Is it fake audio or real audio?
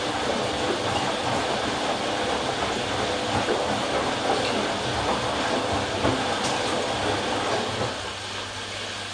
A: real